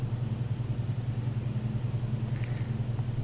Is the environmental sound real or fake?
real